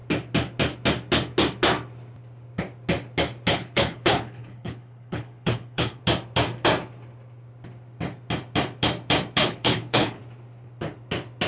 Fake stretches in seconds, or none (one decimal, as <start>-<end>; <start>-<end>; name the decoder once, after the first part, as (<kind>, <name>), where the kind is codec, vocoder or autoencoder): 3.5-6.0 (codec, HILCodec); 9.4-10.2